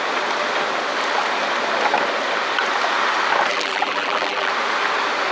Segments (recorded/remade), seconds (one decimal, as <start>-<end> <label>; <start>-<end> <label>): 0.0-3.5 recorded; 3.5-4.5 remade; 4.5-5.3 recorded